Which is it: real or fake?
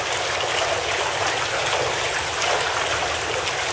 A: real